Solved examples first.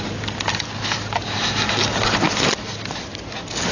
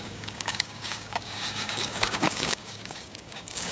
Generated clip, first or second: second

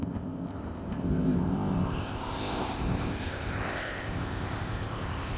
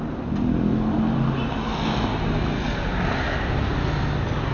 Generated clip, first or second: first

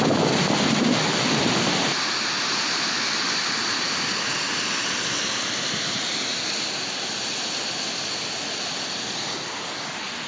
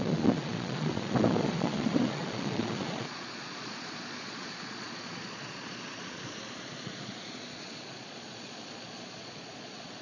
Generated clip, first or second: second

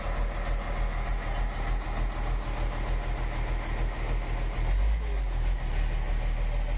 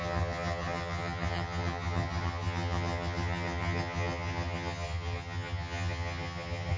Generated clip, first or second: second